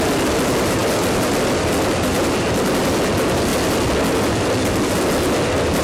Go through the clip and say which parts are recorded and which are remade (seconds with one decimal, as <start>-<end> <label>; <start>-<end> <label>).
0.0-5.8 recorded